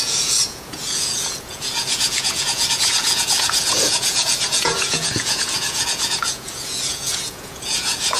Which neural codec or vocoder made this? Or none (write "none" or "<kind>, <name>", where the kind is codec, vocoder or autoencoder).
vocoder, Vocos